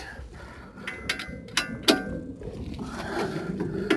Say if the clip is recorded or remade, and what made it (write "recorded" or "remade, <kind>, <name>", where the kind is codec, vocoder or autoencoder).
recorded